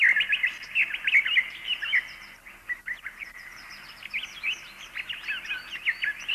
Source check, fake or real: real